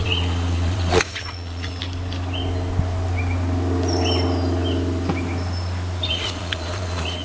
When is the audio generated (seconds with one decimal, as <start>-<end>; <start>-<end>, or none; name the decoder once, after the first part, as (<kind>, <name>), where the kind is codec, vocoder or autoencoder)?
0.0-1.8 (vocoder, Vocos); 6.1-7.2